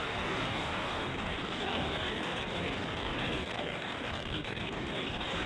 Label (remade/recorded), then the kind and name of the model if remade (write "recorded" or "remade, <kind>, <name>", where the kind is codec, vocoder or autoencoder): remade, codec, DAC